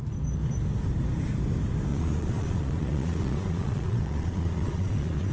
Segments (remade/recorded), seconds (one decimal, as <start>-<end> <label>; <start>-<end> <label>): 0.0-1.9 recorded; 1.9-5.3 remade